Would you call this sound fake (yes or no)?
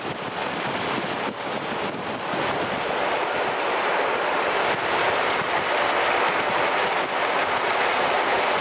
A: no